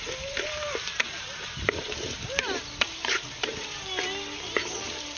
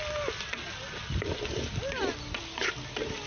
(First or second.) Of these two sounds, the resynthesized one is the first